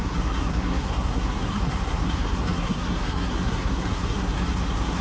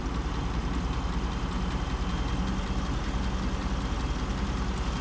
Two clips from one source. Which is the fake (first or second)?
first